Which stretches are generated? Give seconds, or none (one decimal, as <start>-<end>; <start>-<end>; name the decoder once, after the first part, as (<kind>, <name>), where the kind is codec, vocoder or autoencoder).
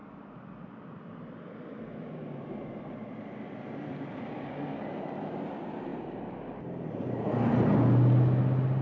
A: 0.0-4.1 (vocoder, BigVGAN v2); 5.9-6.9